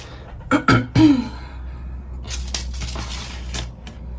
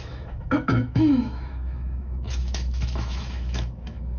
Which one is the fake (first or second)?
second